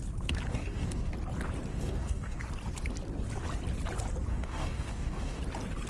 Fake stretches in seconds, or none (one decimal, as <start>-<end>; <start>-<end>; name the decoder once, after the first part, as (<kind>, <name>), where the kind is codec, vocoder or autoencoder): 0.5-1.1 (codec, DAC); 1.7-2.4; 4.3-5.4